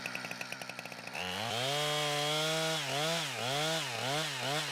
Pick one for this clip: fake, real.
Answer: real